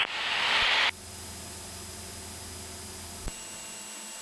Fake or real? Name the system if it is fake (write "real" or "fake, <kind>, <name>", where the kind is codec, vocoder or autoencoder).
real